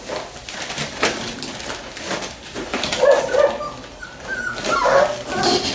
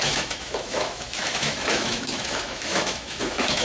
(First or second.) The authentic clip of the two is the first